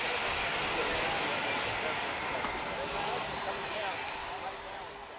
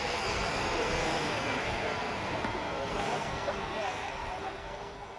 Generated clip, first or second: second